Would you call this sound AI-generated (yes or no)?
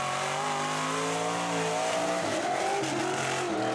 no